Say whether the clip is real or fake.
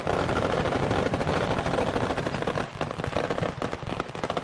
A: real